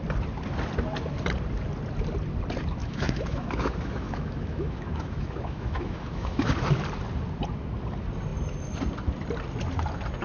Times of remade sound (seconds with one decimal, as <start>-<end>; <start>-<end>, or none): 2.8-6.5